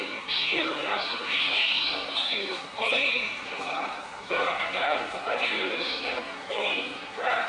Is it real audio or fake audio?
fake